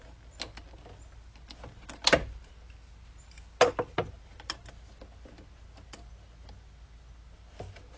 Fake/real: real